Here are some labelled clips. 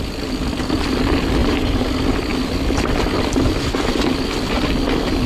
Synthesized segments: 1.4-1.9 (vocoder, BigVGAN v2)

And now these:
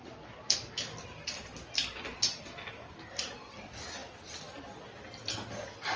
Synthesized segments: none

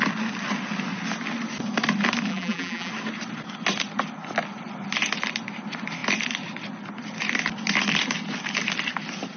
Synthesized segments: 2.3-2.9 (vocoder, BigVGAN v2)

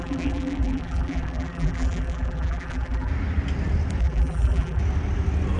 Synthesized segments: 0.0-3.1 (vocoder, BigVGAN v2); 4.0-4.8

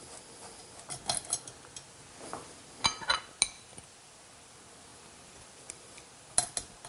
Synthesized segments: 4.9-6.3 (vocoder, BigVGAN v2)